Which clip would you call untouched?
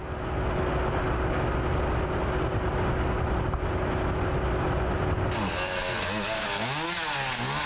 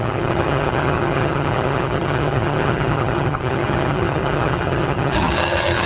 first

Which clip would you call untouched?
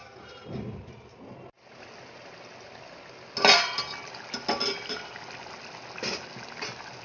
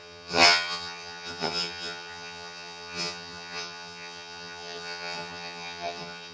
first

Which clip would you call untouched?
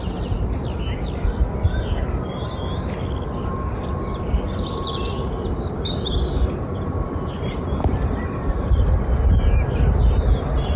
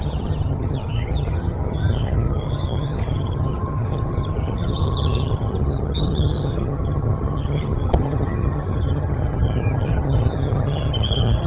first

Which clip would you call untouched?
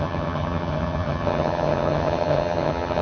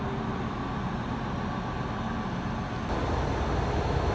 second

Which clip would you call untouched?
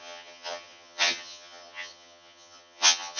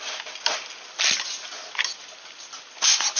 second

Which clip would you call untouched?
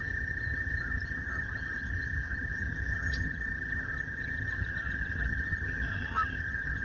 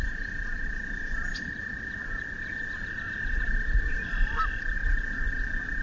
second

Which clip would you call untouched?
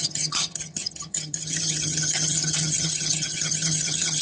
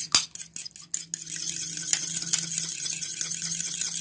second